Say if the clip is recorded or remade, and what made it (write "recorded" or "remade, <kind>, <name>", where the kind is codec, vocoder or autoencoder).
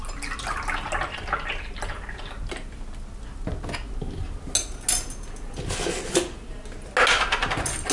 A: recorded